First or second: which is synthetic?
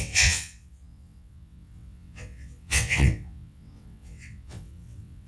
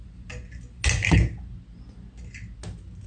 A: first